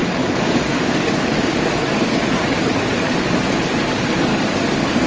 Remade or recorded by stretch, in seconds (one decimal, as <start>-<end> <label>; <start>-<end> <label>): 0.0-3.1 remade; 3.1-4.3 recorded; 4.3-5.1 remade